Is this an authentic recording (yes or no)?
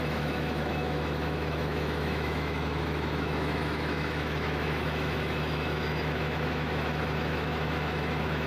no